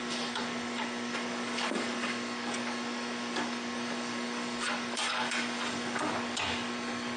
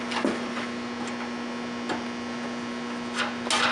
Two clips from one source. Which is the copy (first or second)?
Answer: first